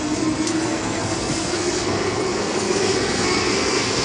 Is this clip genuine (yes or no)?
no